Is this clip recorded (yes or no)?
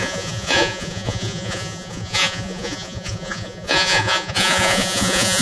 no